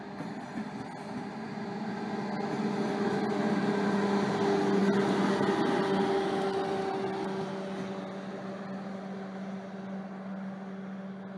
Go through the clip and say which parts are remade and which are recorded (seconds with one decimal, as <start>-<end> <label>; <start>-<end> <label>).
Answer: 0.0-11.4 recorded